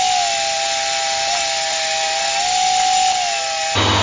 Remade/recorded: recorded